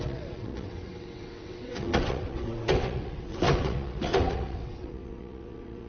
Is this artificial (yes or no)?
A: yes